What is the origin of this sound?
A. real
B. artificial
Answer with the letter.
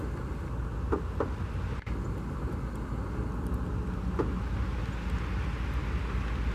A